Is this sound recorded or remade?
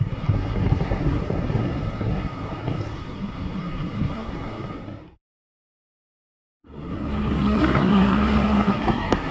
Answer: remade